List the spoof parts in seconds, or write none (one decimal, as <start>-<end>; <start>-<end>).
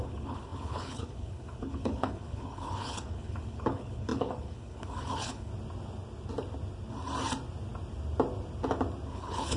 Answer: 0.0-5.5; 9.1-9.6